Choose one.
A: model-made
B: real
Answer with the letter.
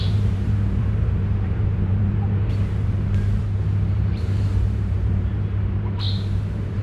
A